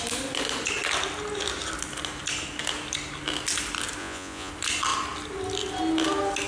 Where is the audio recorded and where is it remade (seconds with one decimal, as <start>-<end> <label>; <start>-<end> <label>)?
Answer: 0.0-4.0 recorded; 4.0-4.5 remade; 4.5-6.5 recorded